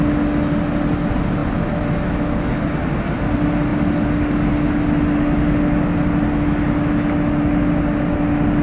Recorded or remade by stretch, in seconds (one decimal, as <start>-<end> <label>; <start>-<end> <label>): 0.0-8.6 recorded